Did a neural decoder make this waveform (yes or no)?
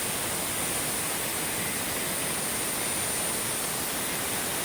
no